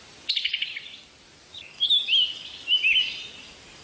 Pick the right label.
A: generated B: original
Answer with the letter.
B